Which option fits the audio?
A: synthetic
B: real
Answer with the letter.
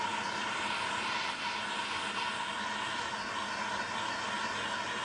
B